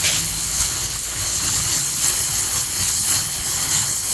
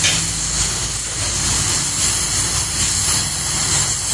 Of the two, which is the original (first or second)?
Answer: second